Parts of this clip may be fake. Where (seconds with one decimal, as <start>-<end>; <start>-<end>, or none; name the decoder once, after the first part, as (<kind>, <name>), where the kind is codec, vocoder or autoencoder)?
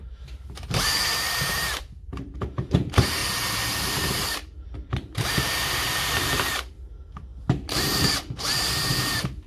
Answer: 0.0-3.2 (vocoder, BigVGAN v2); 3.8-9.5